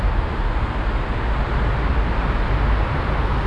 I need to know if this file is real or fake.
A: real